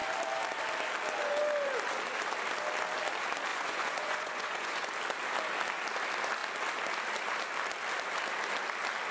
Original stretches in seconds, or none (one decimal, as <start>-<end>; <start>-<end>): 0.0-3.5; 4.9-9.1